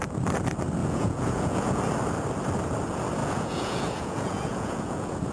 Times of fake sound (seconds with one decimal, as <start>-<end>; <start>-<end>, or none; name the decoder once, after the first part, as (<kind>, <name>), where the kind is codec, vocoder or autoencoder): 0.8-1.8 (vocoder, Vocos); 3.2-5.3